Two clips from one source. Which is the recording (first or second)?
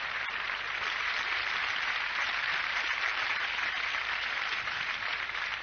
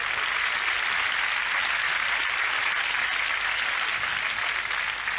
second